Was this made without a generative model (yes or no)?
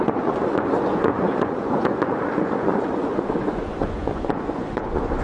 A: no